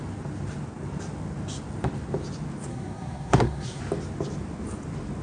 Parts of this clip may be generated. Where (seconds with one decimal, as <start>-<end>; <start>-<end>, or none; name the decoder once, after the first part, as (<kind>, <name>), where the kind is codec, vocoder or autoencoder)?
2.7-3.8 (codec, SNAC)